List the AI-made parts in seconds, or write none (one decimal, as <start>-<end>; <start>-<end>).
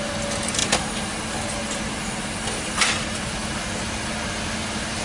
none